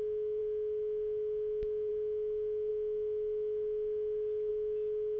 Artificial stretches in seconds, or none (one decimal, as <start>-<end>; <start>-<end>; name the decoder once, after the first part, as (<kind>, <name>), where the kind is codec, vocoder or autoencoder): none